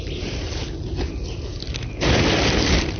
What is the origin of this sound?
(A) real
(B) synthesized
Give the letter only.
A